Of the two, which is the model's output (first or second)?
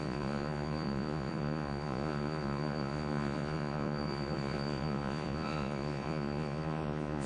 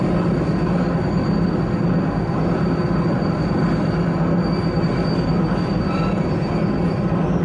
first